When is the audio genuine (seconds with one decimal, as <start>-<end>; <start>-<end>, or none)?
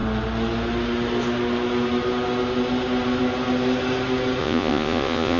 0.0-4.4